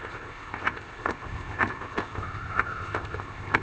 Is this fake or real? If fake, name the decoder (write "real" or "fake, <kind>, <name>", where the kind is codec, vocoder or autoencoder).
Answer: fake, codec, ZipCodec